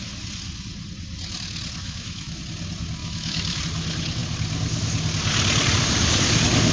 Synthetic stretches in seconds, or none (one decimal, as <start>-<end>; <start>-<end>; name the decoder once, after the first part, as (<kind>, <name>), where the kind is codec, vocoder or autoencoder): 1.8-2.4 (autoencoder, DAC-VAE); 3.0-3.6